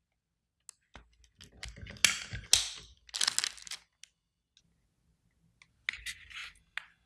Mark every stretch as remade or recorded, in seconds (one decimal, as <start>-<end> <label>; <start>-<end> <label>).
0.0-7.1 recorded